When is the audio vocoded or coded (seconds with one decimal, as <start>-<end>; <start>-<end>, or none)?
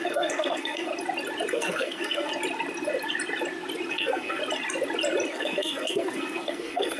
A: 0.0-0.9; 1.5-2.3; 3.9-4.4; 5.3-7.0